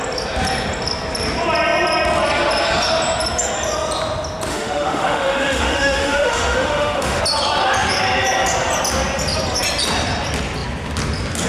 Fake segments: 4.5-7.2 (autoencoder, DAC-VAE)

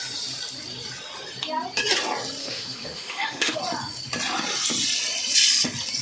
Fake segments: 2.4-3.6 (autoencoder, DAC-VAE)

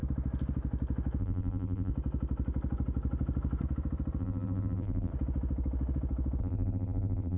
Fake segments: 1.2-1.9 (vocoder, BigVGAN v2); 4.2-5.1; 6.4-7.4

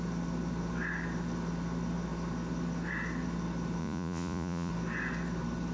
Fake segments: 3.8-4.7 (vocoder, Vocos)

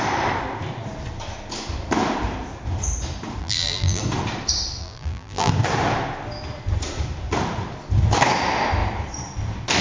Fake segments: 3.4-4.0 (vocoder, BigVGAN v2); 4.8-5.5

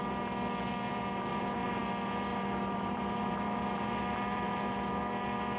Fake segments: 1.3-1.8 (vocoder, BigVGAN v2); 2.3-5.0